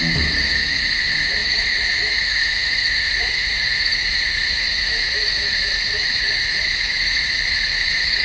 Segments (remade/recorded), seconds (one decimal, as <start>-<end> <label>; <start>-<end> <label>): 0.0-8.2 remade

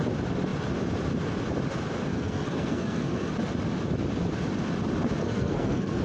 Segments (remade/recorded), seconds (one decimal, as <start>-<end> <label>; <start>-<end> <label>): 0.0-2.1 recorded; 2.1-3.3 remade; 3.3-5.2 recorded; 5.2-6.0 remade

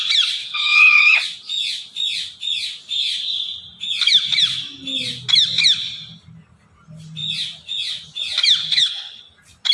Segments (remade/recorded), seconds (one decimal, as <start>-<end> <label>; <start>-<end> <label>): 0.0-0.4 recorded; 0.4-1.2 remade; 1.2-8.6 recorded; 8.6-9.2 remade; 9.2-9.7 recorded

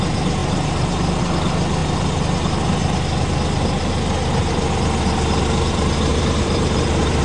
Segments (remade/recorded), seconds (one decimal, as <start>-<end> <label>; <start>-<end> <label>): 0.0-6.1 recorded; 6.1-7.2 remade

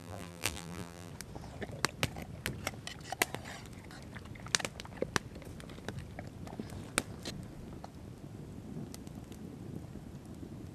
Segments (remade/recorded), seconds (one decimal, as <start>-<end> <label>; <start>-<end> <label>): 0.0-1.1 remade; 1.1-10.7 recorded

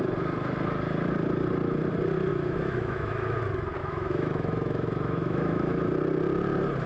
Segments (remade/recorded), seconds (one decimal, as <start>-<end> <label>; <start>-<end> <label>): 0.0-2.3 recorded; 2.3-3.4 remade; 3.4-3.8 recorded; 3.8-5.8 remade; 5.8-6.9 recorded